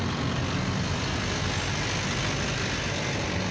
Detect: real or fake real